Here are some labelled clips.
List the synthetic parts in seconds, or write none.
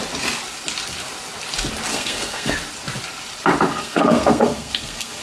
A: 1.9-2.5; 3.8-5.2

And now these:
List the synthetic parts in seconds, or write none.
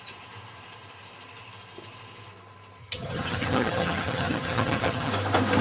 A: 2.8-5.1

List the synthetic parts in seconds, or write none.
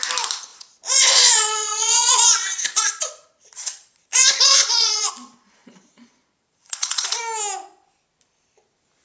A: 0.5-5.1; 5.6-7.2